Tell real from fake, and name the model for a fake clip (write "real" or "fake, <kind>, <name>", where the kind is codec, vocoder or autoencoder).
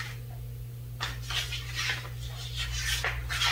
real